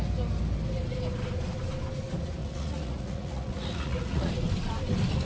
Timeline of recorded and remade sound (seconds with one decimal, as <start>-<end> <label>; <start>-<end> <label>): 0.0-2.4 recorded; 2.4-4.3 remade; 4.3-5.2 recorded